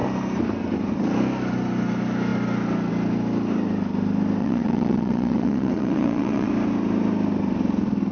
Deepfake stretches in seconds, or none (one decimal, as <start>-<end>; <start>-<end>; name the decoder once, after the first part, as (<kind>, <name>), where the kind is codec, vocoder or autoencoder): 4.4-6.5 (vocoder, WaveNeXt)